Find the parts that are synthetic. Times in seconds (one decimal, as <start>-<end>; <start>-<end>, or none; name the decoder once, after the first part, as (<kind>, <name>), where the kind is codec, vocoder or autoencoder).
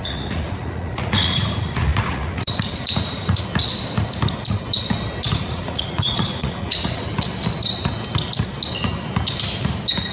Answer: 0.0-3.5 (vocoder, Vocos); 5.4-7.1